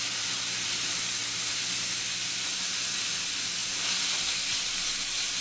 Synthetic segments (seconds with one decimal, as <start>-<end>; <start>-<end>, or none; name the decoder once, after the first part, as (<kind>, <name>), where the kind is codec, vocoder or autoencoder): none